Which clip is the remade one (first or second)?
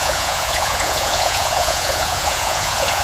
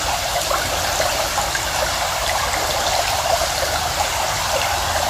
first